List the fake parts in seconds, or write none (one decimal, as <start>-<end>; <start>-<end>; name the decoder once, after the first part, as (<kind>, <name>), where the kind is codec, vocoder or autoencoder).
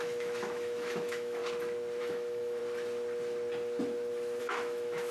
0.0-1.4 (autoencoder, DAC-VAE); 2.0-2.6; 4.4-5.1